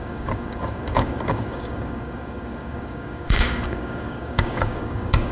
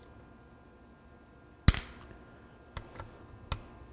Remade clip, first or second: first